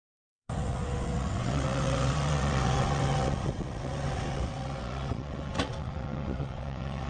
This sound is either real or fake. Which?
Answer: fake